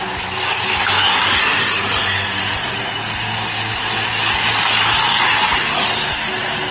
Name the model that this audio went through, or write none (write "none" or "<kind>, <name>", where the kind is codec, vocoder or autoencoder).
none